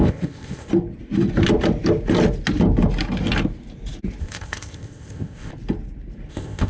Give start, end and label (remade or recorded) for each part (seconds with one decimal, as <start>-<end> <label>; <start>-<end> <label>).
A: 0.0-0.7 remade; 0.7-4.2 recorded; 4.2-5.5 remade; 5.5-6.3 recorded; 6.3-6.7 remade

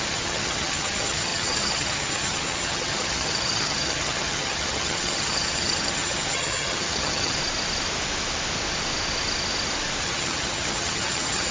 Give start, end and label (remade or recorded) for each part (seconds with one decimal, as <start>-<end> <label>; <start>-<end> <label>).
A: 0.0-7.4 remade; 7.4-10.0 recorded; 10.0-11.5 remade

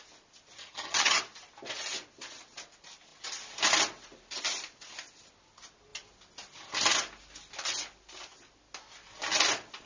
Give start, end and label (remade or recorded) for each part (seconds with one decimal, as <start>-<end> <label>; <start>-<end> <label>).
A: 0.0-0.6 recorded; 0.6-1.2 remade; 1.2-9.9 recorded

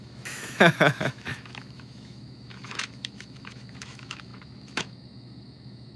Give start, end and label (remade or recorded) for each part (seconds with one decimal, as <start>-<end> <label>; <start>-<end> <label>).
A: 0.0-6.0 remade

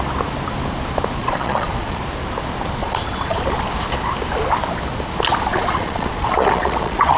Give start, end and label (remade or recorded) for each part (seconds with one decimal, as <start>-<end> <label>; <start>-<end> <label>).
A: 0.0-1.2 recorded; 1.2-2.0 remade; 2.0-2.8 recorded; 2.8-3.4 remade; 3.4-5.5 recorded; 5.5-7.2 remade

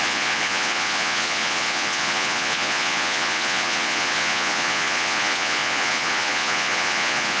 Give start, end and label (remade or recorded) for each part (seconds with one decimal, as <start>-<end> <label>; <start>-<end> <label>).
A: 0.0-7.4 remade